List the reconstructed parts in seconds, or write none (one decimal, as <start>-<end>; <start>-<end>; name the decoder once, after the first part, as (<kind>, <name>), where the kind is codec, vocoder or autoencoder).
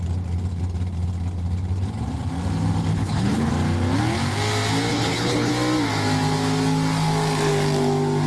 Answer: 2.9-3.5 (codec, HILCodec); 4.9-5.5